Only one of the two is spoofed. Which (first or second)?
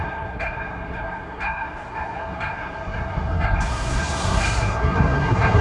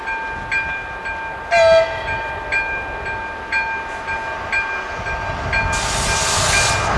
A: first